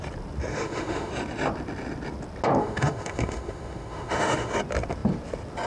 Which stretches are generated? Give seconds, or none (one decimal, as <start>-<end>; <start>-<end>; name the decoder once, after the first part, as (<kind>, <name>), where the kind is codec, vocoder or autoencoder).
0.5-1.1 (autoencoder, DAC-VAE); 2.6-4.5